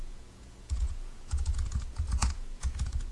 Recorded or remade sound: remade